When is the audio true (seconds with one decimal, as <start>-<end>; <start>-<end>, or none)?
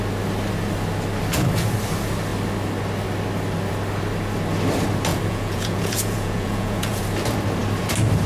0.0-5.1; 7.0-8.3